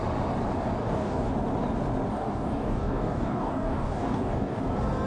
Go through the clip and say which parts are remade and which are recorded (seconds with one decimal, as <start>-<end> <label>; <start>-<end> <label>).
0.0-0.8 recorded; 0.8-1.3 remade; 1.3-2.1 recorded; 2.1-4.6 remade; 4.6-5.1 recorded